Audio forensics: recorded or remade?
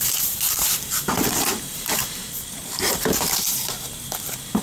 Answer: remade